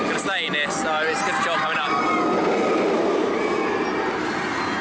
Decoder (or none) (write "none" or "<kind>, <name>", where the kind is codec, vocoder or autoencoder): none